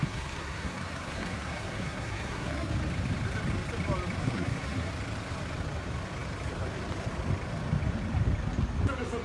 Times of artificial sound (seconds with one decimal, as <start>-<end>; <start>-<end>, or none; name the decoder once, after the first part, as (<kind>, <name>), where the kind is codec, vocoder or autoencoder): 0.0-2.7 (codec, SNAC); 4.2-4.9

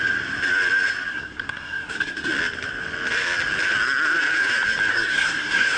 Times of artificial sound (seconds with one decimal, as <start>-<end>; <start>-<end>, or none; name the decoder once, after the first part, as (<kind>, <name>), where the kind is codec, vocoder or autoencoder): 1.1-2.3 (codec, SNAC); 4.9-5.8

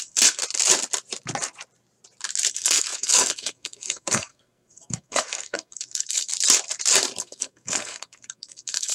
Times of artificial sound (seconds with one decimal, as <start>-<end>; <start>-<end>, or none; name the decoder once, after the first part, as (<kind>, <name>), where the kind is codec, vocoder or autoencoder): 0.0-0.4 (codec, SNAC); 2.5-6.3; 7.2-8.9

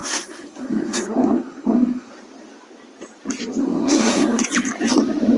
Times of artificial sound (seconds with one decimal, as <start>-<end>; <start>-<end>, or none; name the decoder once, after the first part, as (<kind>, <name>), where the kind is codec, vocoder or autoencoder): 0.0-2.1 (codec, SNAC); 3.6-4.4

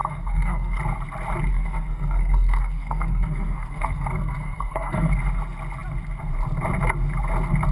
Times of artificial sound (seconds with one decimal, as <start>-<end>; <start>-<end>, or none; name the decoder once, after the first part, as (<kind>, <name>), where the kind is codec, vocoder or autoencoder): 0.0-0.8 (codec, SNAC); 1.5-5.1

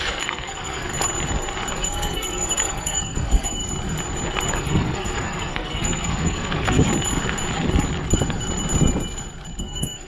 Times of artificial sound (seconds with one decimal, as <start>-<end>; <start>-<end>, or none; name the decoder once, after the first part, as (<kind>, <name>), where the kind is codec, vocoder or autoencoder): 0.0-0.9 (codec, SNAC); 1.7-3.6; 4.5-6.9; 9.6-10.1

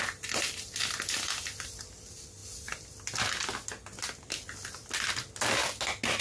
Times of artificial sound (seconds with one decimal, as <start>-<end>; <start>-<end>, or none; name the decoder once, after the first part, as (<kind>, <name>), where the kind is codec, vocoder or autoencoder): none

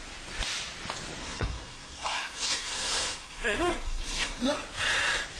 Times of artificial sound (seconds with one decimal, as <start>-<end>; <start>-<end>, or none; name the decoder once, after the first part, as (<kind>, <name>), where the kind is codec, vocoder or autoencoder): 1.2-4.4 (codec, SNAC)